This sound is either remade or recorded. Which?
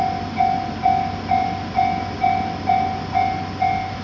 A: remade